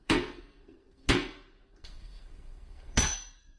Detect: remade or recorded remade